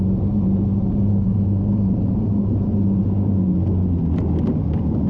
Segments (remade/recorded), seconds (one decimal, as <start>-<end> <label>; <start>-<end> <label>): 0.0-0.7 recorded; 0.7-3.0 remade; 3.0-5.1 recorded